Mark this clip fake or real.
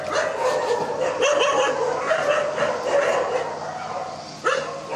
real